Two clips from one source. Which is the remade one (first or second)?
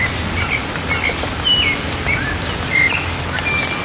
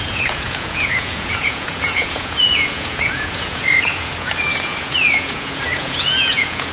second